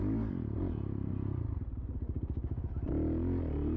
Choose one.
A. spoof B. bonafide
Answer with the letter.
B